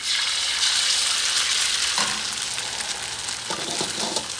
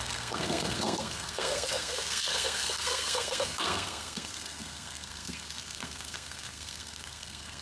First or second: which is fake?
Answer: second